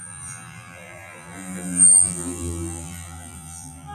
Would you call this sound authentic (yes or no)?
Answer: no